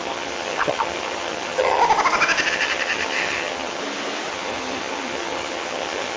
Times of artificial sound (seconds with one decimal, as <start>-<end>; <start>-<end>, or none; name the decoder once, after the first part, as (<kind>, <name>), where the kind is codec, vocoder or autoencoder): 0.0-1.8 (vocoder, HiFi-GAN); 2.5-3.8; 4.3-6.2